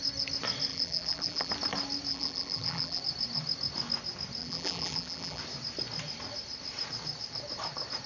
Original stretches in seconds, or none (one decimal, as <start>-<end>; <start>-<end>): 0.0-0.7; 1.5-2.1; 3.0-4.4; 5.4-8.1